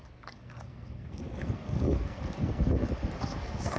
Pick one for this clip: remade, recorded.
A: remade